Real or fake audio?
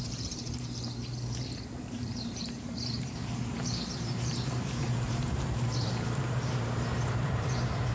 fake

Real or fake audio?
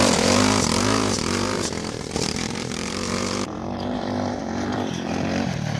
fake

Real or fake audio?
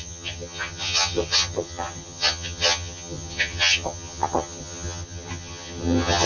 fake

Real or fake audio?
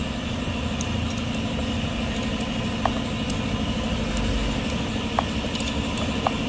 real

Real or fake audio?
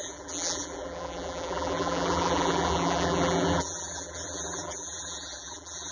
fake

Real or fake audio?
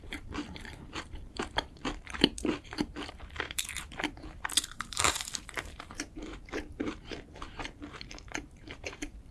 fake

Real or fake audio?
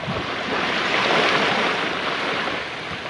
real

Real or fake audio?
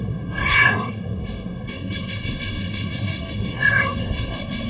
fake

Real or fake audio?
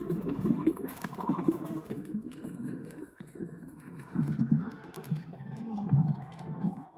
fake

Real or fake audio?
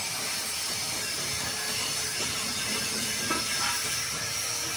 real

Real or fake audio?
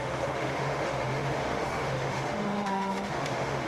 fake